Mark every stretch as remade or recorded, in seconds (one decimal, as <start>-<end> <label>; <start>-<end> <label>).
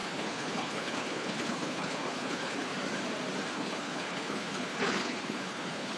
0.0-2.7 remade; 2.7-3.5 recorded; 3.5-6.0 remade